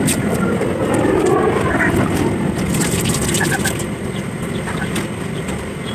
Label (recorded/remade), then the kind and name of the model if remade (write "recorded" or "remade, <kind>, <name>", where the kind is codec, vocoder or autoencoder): recorded